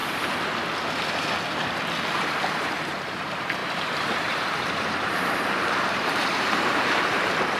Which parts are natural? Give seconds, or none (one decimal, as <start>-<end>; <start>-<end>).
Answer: 0.0-2.0